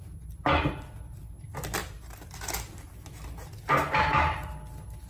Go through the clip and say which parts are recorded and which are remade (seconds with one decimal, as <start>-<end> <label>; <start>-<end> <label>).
0.0-1.8 recorded; 1.8-2.3 remade; 2.3-5.1 recorded